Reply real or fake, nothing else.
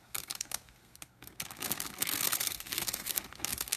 fake